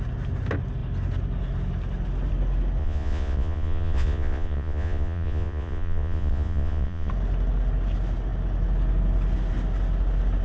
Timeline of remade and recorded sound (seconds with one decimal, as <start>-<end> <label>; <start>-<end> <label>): 0.0-2.8 recorded; 2.8-7.1 remade; 7.1-10.4 recorded

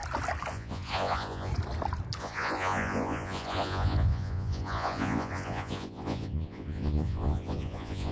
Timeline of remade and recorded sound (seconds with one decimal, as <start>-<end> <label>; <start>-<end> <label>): 0.0-0.5 recorded; 0.5-1.5 remade; 1.5-2.2 recorded; 2.2-8.1 remade

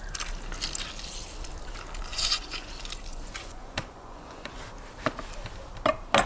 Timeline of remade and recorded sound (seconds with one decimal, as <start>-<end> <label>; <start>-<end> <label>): 0.0-2.1 recorded; 2.1-2.7 remade; 2.7-3.1 recorded; 3.1-4.6 remade; 4.6-6.3 recorded

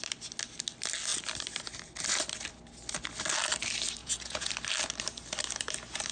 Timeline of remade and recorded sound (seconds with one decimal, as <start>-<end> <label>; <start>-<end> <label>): 0.0-4.0 recorded; 4.0-4.5 remade; 4.5-6.1 recorded

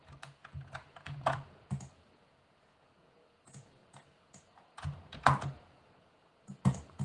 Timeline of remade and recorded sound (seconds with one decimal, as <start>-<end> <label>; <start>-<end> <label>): 0.0-7.0 remade